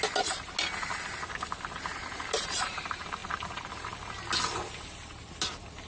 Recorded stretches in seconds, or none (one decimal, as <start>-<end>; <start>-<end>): 0.0-5.9